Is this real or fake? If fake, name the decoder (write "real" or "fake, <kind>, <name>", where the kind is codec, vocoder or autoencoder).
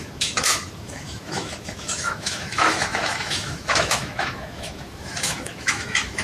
fake, autoencoder, DAC-VAE